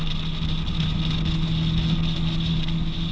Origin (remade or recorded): recorded